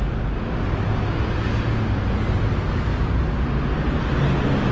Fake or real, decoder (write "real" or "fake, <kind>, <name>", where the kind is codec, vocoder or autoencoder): real